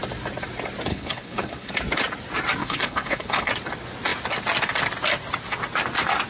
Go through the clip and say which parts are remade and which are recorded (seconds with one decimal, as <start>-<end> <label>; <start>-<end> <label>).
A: 0.0-0.9 recorded; 0.9-1.7 remade; 1.7-2.6 recorded; 2.6-3.5 remade; 3.5-6.3 recorded